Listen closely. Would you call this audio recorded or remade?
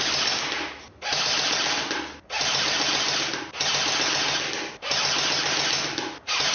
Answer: recorded